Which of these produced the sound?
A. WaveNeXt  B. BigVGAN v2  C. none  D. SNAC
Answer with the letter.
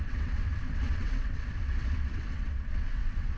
A